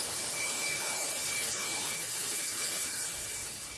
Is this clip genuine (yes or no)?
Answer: no